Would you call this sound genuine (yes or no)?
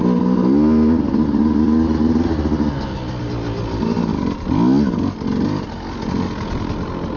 yes